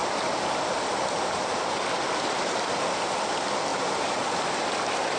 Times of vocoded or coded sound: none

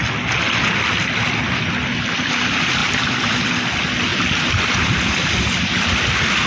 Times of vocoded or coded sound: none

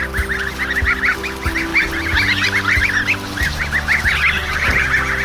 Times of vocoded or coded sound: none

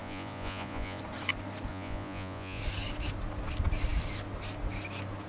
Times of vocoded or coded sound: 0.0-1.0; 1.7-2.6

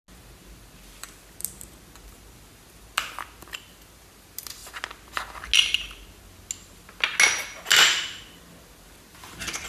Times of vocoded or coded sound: none

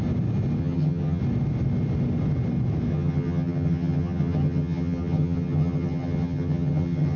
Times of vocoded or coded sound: 0.6-1.2; 2.9-7.2

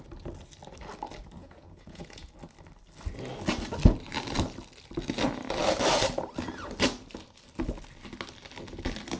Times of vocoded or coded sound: 1.4-2.3

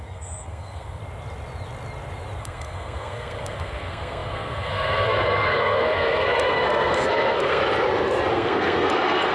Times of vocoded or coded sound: 0.0-1.0; 2.4-7.6; 8.3-9.3